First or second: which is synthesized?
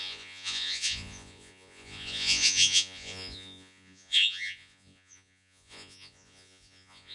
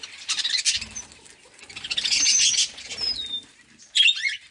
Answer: first